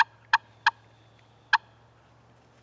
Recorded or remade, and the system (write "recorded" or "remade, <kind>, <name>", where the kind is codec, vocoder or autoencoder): recorded